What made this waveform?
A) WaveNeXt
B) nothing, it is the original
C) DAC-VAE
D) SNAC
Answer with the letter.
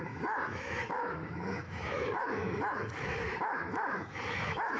C